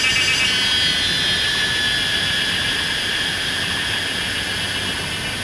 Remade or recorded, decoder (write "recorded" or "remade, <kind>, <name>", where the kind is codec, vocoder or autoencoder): recorded